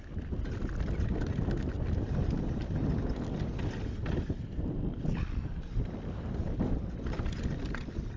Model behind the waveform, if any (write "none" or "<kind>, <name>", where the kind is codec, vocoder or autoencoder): none